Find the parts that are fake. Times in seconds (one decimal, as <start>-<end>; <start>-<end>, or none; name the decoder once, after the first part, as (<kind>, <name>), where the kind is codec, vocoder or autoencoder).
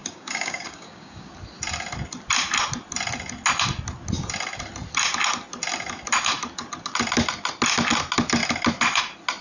0.0-1.3 (codec, DAC)